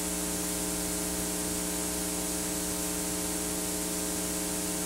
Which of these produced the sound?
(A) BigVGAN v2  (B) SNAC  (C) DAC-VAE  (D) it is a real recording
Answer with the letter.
D